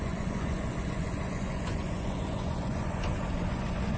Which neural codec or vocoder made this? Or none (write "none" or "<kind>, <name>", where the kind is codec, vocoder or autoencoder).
vocoder, Vocos